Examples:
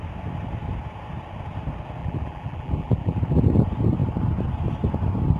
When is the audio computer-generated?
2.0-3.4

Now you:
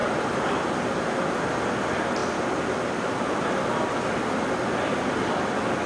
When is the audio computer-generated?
0.0-0.5